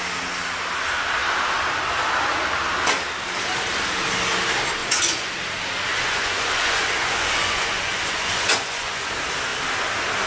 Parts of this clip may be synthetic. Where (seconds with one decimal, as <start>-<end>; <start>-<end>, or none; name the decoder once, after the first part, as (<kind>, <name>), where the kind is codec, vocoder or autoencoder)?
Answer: 4.8-5.3 (vocoder, Vocos); 5.9-9.1